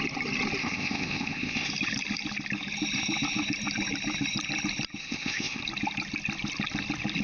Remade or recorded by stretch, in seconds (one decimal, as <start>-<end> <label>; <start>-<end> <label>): 0.0-0.6 recorded; 0.6-1.7 remade; 1.7-5.0 recorded; 5.0-5.6 remade; 5.6-7.2 recorded